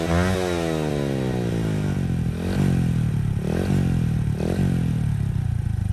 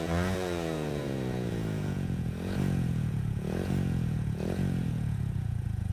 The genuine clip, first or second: first